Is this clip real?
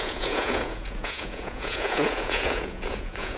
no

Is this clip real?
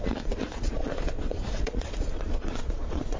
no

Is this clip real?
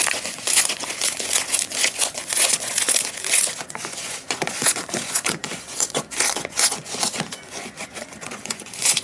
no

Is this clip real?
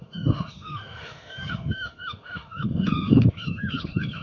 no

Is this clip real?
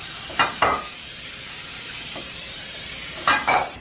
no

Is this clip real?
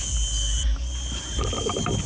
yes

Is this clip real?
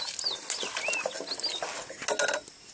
yes